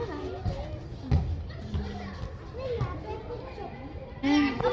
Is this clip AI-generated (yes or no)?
no